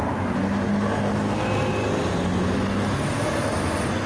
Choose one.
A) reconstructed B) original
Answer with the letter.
B